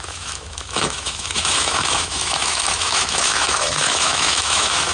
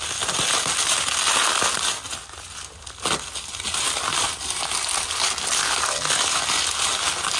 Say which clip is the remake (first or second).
first